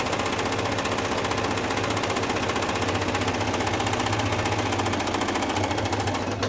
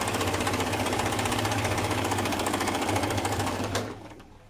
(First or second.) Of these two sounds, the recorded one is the first